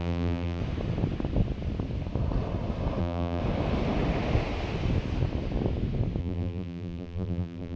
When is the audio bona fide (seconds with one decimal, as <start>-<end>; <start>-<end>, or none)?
0.6-3.0; 3.4-6.2